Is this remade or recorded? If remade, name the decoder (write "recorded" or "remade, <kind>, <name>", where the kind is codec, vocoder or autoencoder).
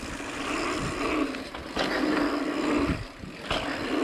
recorded